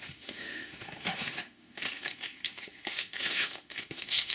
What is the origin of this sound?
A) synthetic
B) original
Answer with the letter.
A